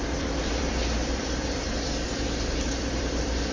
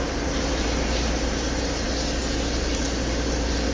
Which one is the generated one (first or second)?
first